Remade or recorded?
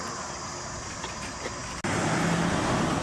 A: recorded